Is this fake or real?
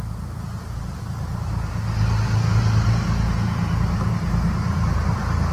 real